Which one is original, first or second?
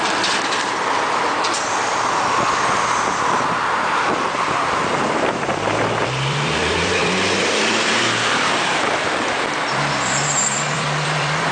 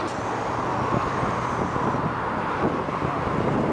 second